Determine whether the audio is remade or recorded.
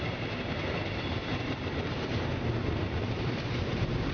remade